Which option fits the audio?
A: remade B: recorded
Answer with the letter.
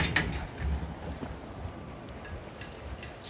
B